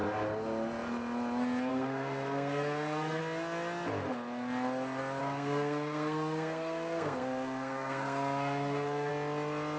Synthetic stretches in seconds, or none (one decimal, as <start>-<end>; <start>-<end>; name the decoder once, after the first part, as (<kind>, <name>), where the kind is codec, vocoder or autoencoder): 1.7-3.2 (codec, SNAC); 5.2-9.1